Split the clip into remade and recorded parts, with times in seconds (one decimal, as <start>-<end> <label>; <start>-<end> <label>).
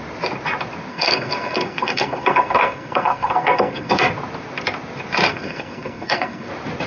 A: 0.0-0.9 recorded; 0.9-4.0 remade; 4.0-5.3 recorded; 5.3-6.5 remade; 6.5-6.9 recorded